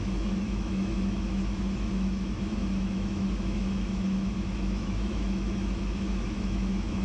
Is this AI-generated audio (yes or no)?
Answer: yes